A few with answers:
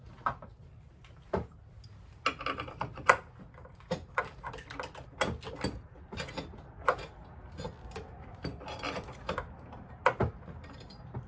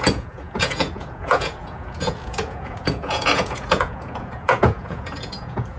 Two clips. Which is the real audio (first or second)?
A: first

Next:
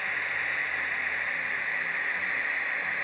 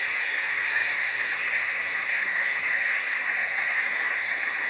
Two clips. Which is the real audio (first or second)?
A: first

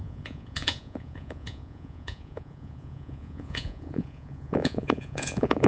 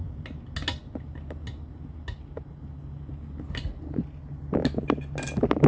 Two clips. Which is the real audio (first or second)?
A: second